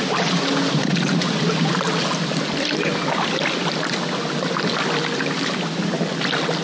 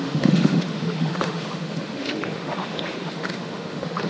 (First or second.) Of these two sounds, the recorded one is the first